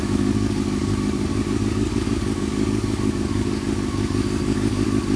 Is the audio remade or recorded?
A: remade